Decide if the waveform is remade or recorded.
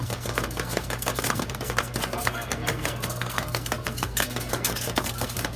remade